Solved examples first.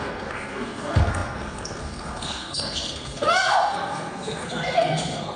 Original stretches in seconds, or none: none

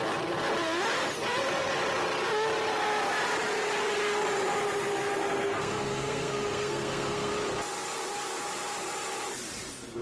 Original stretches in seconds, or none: 0.0-5.1; 7.3-10.0

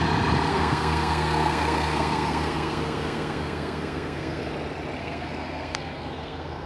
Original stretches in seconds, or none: 0.0-0.5; 4.5-5.0

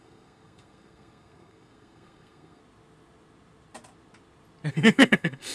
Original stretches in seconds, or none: 2.6-4.7

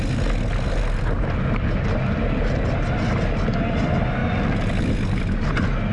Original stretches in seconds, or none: 0.0-5.9

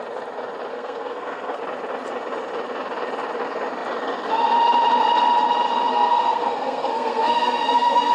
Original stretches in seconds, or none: 0.0-0.7; 1.6-5.9